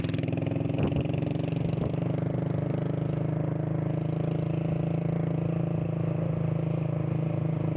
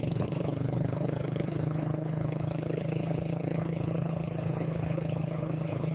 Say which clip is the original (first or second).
first